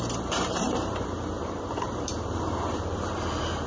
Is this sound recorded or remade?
remade